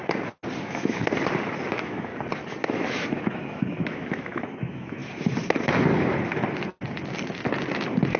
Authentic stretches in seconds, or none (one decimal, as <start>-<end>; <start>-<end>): 0.0-0.6; 1.0-1.7; 2.1-2.6; 5.0-8.2